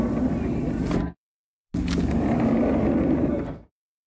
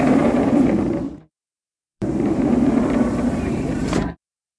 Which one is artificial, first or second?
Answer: second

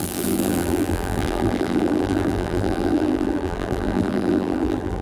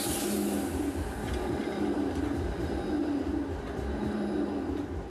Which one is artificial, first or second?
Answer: first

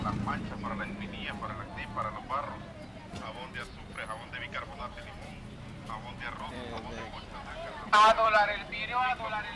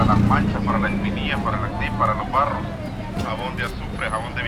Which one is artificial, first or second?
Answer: first